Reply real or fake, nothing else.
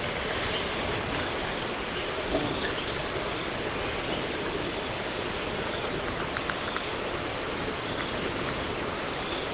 real